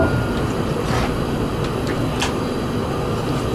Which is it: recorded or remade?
recorded